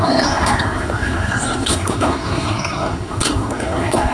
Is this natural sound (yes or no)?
no